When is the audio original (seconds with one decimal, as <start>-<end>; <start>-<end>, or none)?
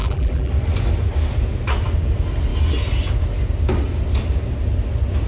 0.5-5.3